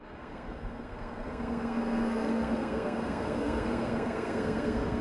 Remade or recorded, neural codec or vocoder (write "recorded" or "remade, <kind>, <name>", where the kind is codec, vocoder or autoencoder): remade, codec, SNAC